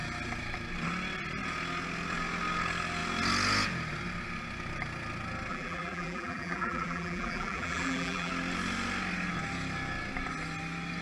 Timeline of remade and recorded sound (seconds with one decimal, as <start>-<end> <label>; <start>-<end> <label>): 0.0-5.5 recorded; 5.5-8.3 remade; 8.3-11.0 recorded